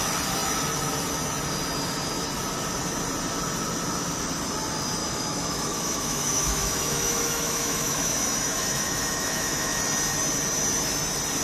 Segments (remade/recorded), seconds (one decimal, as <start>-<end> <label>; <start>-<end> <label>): 0.0-5.0 recorded; 5.0-9.8 remade; 9.8-11.4 recorded

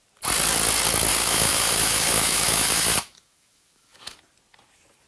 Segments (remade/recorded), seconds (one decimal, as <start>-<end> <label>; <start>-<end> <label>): 0.0-1.1 recorded; 1.1-4.2 remade; 4.2-5.1 recorded

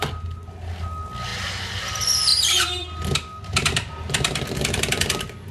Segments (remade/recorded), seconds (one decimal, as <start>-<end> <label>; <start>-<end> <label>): 0.0-5.5 recorded

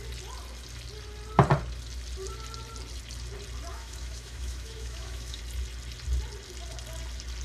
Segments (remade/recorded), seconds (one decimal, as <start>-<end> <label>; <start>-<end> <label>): 0.0-3.7 recorded; 3.7-5.4 remade; 5.4-7.4 recorded